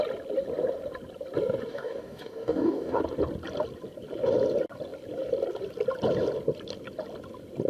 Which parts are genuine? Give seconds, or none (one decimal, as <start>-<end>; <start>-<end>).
0.0-1.7; 3.0-7.7